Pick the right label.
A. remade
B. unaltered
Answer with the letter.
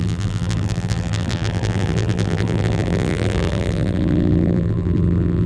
A